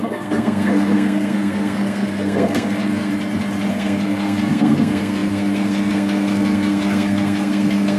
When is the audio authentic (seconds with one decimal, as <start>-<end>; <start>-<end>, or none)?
3.1-3.7